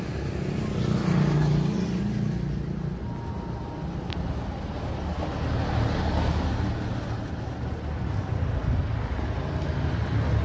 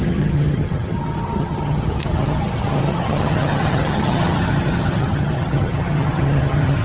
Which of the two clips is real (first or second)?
first